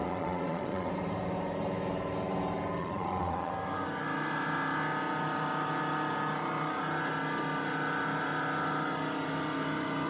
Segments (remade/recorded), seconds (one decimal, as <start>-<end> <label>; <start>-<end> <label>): 0.0-0.9 remade; 0.9-2.8 recorded; 2.8-3.5 remade; 3.5-10.1 recorded